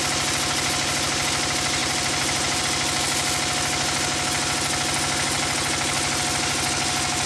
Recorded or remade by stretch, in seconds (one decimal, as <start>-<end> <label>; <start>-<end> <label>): 0.0-1.8 recorded; 1.8-2.6 remade; 2.6-7.3 recorded